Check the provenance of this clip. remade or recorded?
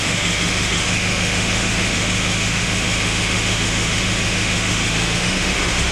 remade